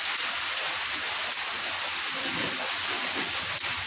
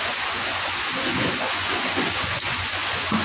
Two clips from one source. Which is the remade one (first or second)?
second